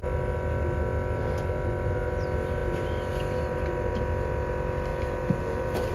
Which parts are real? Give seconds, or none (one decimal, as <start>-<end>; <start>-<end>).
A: 0.0-4.9